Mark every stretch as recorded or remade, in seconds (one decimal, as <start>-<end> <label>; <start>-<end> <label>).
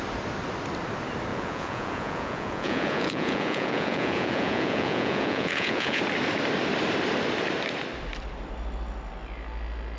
0.0-1.3 recorded; 1.3-6.0 remade; 6.0-10.0 recorded